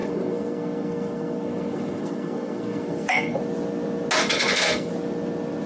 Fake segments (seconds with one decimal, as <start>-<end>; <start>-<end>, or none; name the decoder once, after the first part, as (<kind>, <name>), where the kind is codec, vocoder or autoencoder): 0.0-3.4 (codec, SNAC); 4.2-4.9